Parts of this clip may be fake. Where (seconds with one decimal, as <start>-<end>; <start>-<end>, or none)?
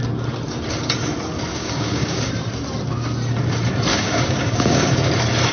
1.5-2.3; 3.9-5.0